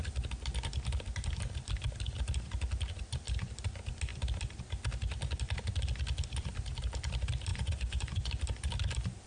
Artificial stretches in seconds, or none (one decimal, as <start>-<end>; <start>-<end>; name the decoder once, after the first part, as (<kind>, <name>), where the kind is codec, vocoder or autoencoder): 7.5-8.3 (vocoder, Vocos)